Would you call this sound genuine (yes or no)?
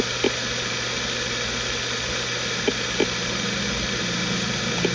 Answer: yes